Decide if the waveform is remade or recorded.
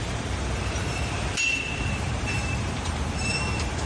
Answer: remade